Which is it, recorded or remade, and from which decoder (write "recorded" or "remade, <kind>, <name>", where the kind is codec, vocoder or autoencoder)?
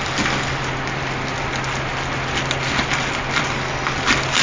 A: recorded